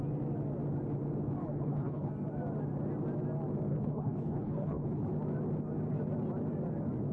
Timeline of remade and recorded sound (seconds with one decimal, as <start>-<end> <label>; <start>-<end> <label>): 0.0-1.4 recorded; 1.4-2.1 remade; 2.1-3.7 recorded; 3.7-5.1 remade; 5.1-7.1 recorded